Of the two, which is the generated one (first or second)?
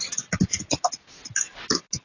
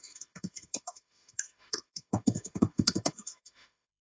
second